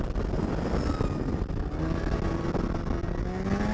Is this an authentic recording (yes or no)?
yes